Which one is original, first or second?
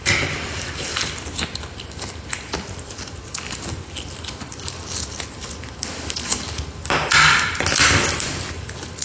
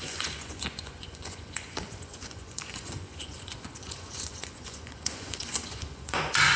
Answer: first